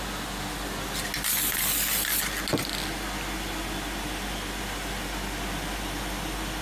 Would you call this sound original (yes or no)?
yes